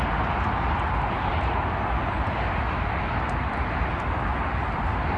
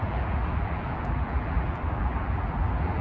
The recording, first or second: first